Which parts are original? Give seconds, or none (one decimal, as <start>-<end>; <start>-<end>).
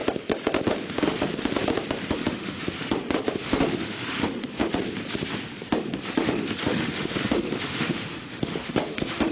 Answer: 0.0-1.0; 1.5-2.1; 4.6-5.7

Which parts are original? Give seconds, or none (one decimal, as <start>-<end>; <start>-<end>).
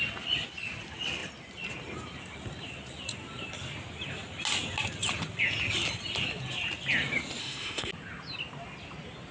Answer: 0.0-7.4; 7.9-9.3